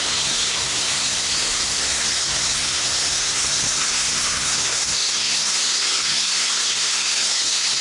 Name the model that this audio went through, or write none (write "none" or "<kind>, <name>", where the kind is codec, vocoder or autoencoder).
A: codec, SNAC